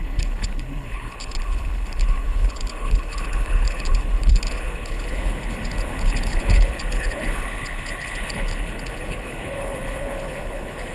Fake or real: fake